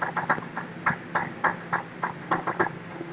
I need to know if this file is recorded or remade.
recorded